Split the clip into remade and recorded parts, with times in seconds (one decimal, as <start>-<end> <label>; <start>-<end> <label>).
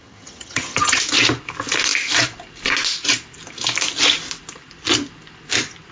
0.0-1.0 remade; 1.0-5.9 recorded